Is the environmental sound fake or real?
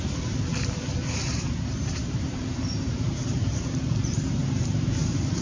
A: fake